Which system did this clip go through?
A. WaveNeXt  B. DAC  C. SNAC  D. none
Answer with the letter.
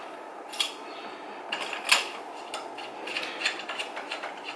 D